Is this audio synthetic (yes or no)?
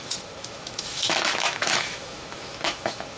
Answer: yes